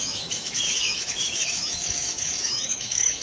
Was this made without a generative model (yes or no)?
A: no